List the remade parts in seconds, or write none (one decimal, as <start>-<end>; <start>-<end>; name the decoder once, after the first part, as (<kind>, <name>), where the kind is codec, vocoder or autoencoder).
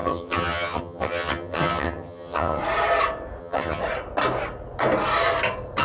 0.0-2.6 (vocoder, HiFi-GAN); 3.4-3.8